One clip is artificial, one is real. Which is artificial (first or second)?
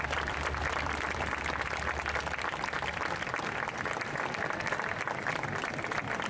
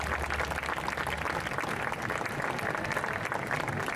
first